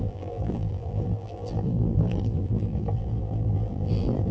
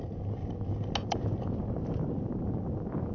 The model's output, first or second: first